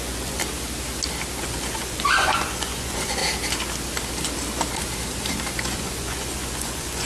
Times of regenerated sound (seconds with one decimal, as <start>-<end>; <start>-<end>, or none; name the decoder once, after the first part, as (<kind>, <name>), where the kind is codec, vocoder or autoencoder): 0.0-0.4 (vocoder, Vocos); 1.4-3.2; 5.5-7.0